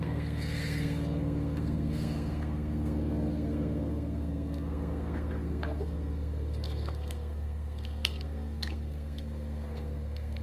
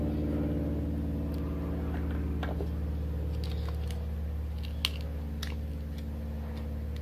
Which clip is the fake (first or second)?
first